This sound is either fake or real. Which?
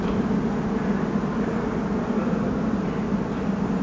real